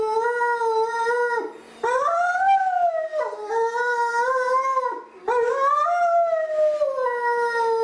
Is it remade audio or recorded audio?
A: recorded